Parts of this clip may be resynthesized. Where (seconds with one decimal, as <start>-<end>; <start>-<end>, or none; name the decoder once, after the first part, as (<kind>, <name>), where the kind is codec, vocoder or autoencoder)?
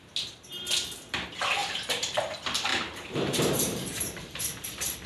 1.6-2.2 (vocoder, BigVGAN v2); 2.7-5.1